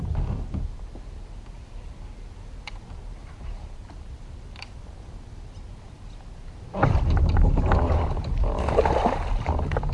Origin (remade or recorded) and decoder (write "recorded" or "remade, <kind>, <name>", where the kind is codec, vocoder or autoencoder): recorded